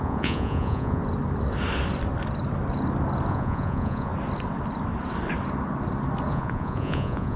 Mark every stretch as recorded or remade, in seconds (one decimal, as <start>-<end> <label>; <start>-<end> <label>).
0.0-1.0 remade; 1.0-3.3 recorded; 3.3-4.1 remade; 4.1-6.3 recorded; 6.3-7.4 remade